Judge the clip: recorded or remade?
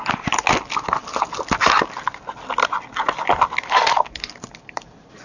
recorded